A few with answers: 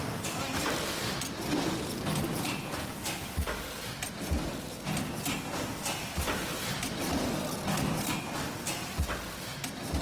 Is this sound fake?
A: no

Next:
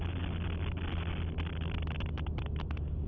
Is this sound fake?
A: no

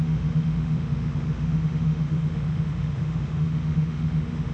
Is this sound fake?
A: yes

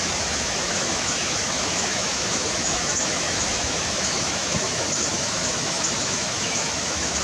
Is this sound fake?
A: yes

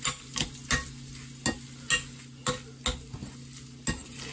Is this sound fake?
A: no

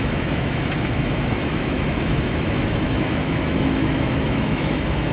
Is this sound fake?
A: yes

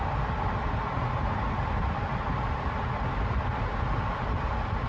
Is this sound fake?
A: no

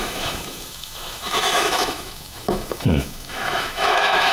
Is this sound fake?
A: yes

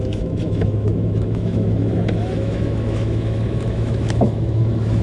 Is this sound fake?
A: yes